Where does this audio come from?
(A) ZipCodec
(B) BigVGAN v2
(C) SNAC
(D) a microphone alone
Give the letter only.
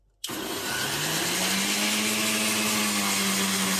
D